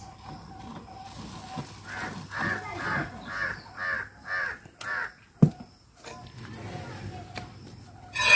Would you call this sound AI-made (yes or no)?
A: no